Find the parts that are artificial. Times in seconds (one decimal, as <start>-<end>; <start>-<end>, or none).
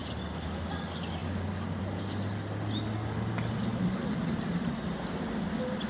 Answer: 3.7-4.6